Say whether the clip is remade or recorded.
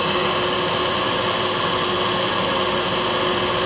recorded